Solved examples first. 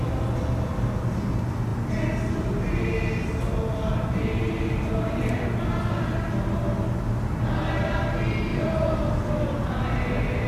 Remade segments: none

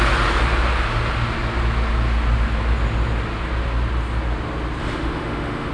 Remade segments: 4.8-5.7 (autoencoder, DAC-VAE)

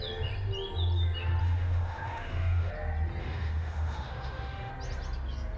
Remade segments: 1.4-2.7 (autoencoder, DAC-VAE); 3.2-4.7